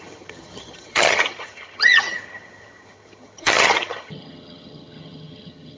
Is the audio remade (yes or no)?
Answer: yes